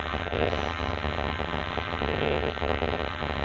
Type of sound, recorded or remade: remade